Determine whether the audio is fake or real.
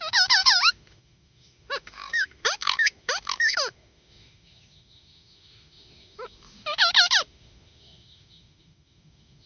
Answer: fake